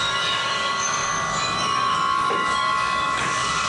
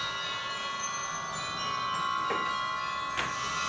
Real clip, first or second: second